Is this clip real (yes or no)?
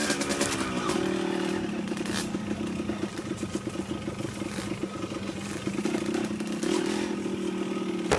yes